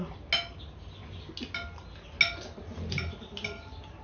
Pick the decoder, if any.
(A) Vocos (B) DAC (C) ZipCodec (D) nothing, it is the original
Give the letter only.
D